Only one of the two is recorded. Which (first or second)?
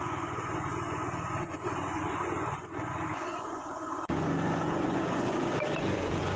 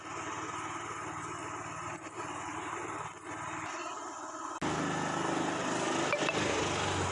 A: second